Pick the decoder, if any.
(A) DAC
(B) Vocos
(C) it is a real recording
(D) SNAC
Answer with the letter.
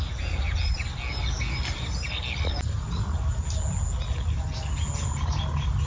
C